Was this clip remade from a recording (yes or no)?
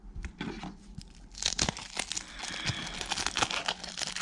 no